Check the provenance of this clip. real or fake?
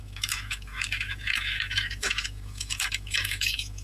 fake